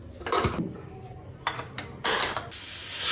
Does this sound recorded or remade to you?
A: recorded